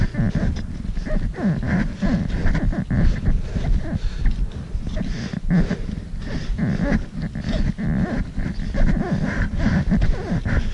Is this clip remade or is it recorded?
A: recorded